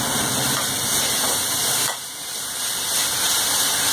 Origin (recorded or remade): recorded